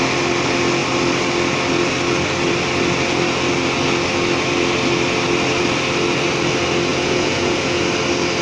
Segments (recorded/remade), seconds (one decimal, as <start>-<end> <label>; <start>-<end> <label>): 0.0-6.9 recorded; 6.9-7.8 remade; 7.8-8.4 recorded